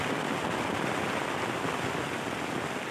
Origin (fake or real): real